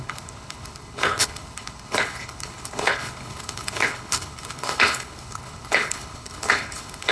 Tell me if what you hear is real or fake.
fake